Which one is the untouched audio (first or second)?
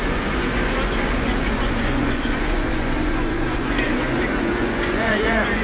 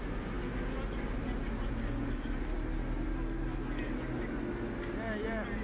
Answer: second